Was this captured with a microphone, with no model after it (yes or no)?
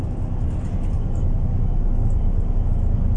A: yes